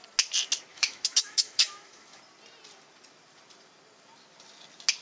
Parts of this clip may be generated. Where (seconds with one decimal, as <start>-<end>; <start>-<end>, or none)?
0.7-2.2